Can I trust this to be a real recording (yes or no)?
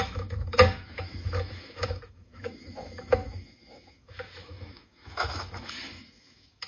no